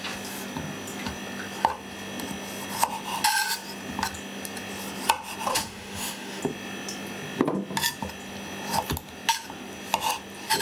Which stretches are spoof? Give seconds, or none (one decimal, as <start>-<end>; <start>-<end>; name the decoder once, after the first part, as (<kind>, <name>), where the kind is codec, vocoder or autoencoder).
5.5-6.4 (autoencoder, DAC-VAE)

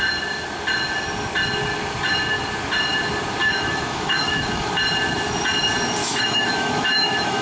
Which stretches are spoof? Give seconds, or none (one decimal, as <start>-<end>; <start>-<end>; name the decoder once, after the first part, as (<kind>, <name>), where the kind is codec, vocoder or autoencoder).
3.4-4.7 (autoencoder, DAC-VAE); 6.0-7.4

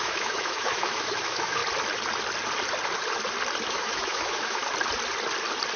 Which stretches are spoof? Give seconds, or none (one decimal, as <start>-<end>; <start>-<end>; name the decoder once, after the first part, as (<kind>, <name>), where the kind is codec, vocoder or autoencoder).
0.0-1.6 (autoencoder, DAC-VAE); 3.7-4.6

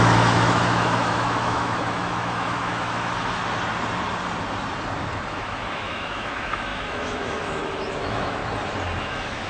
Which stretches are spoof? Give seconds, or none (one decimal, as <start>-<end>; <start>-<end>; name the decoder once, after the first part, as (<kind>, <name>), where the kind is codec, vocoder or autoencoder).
0.0-3.4 (autoencoder, DAC-VAE); 5.3-8.4; 9.0-9.5

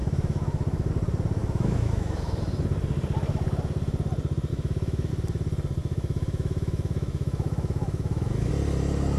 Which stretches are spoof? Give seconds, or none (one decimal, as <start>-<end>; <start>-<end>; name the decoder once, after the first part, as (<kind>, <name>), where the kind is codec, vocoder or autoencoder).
0.0-0.9 (autoencoder, DAC-VAE); 1.4-2.4; 4.5-5.1; 5.8-8.5

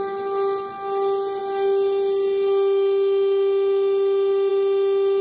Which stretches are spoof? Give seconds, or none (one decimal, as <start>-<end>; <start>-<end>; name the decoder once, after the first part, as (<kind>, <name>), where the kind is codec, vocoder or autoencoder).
none